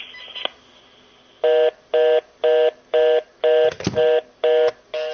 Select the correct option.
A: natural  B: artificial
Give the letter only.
A